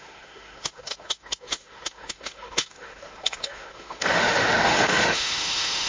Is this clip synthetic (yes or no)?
yes